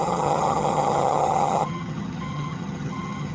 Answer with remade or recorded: remade